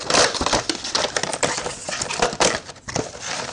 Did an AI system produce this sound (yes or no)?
no